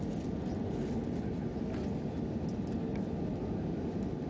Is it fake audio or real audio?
real